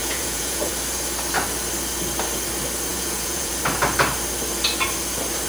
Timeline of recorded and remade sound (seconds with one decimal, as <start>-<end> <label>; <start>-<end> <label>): 0.0-0.7 remade; 0.7-2.9 recorded; 2.9-3.5 remade; 3.5-5.5 recorded